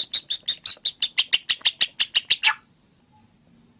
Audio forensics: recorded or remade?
recorded